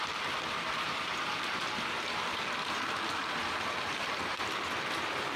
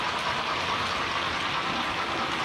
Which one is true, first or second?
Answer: second